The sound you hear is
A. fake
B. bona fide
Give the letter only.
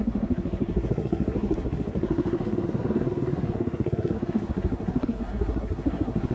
A